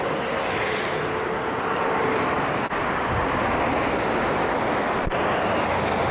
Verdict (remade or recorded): recorded